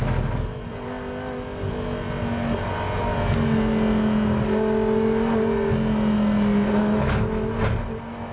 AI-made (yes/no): no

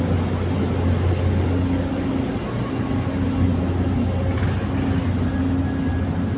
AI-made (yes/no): no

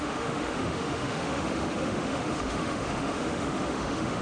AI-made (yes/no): yes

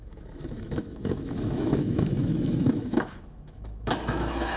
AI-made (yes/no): yes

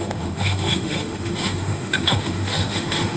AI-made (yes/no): yes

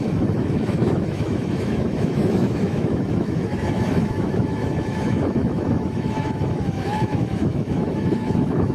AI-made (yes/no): yes